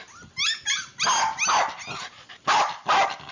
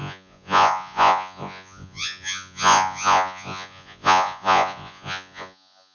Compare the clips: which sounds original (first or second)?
first